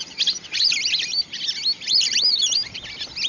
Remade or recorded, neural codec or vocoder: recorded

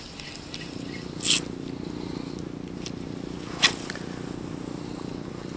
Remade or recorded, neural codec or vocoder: recorded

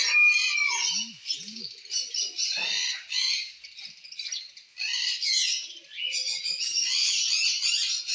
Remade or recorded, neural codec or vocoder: recorded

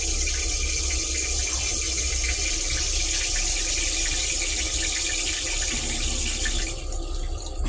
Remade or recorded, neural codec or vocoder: recorded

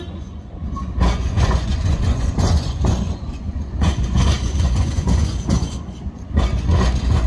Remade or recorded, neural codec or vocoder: remade, vocoder, Vocos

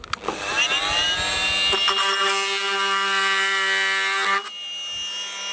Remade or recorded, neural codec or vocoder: recorded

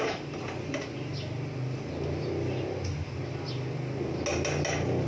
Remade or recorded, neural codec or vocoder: recorded